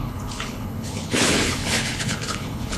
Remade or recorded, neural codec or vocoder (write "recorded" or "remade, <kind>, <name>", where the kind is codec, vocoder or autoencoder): remade, codec, HILCodec